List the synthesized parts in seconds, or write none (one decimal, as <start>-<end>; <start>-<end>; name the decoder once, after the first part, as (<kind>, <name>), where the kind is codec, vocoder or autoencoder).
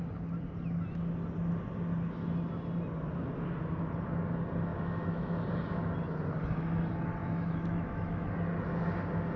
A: 4.7-5.4 (autoencoder, DAC-VAE); 7.2-8.3